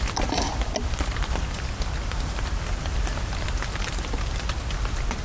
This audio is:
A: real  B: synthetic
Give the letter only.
A